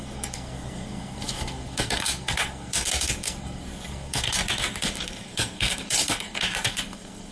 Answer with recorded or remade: remade